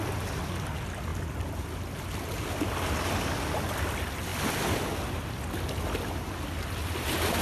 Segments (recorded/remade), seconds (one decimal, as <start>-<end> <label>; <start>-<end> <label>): 0.0-7.4 recorded